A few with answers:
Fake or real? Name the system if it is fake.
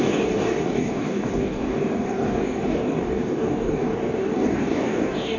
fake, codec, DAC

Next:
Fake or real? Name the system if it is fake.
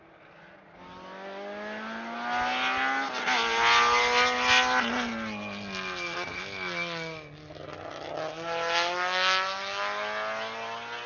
real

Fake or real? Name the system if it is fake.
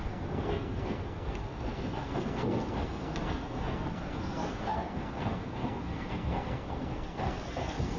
fake, codec, SNAC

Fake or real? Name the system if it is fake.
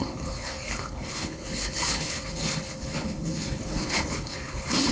fake, codec, HILCodec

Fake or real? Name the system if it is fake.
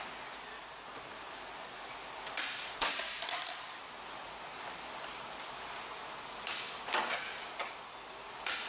real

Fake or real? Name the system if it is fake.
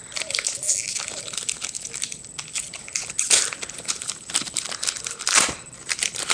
real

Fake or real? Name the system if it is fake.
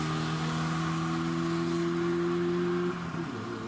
real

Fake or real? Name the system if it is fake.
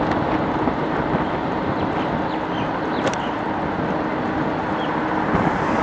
real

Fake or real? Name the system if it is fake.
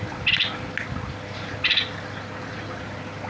real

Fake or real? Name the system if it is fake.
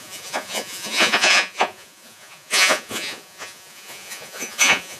fake, vocoder, Vocos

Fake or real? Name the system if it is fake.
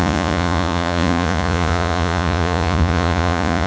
fake, vocoder, Vocos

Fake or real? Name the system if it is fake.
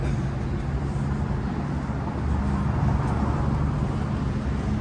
real